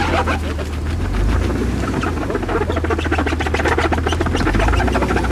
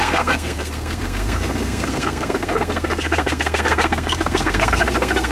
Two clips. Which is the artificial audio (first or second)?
second